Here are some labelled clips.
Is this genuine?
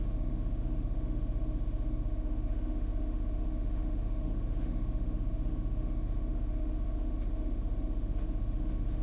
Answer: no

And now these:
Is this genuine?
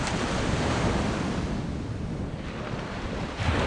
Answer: yes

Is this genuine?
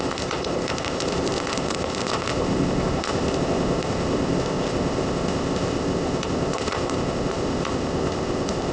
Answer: no